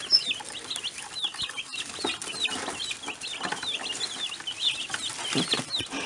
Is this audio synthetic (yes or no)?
no